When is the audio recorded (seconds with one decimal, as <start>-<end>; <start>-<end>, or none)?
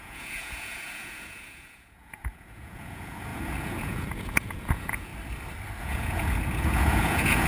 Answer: 5.1-5.8